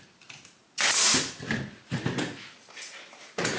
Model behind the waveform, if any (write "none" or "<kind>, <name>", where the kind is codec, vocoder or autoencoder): vocoder, BigVGAN v2